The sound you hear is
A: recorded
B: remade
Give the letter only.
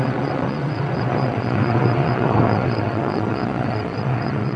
B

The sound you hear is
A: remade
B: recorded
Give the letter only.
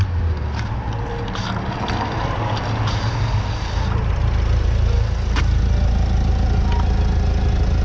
B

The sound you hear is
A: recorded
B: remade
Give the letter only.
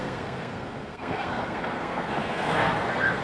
B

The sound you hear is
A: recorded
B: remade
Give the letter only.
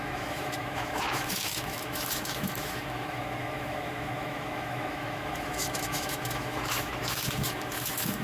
B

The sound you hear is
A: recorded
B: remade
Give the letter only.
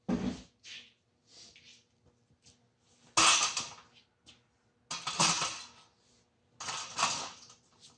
A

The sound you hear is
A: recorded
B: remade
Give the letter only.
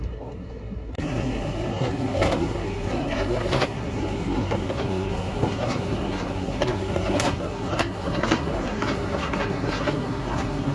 B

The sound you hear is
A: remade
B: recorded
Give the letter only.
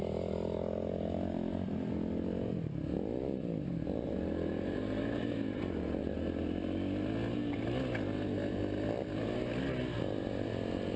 B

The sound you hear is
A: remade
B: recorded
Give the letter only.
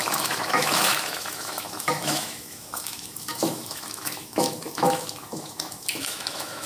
A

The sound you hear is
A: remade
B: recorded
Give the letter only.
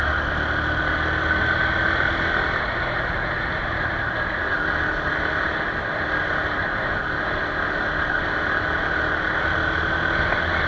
B